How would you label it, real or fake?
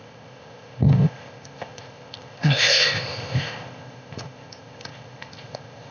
fake